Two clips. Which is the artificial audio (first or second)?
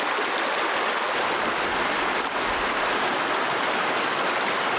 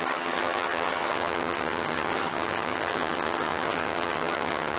second